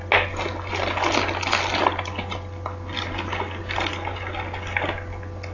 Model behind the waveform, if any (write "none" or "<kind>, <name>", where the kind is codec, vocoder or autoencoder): none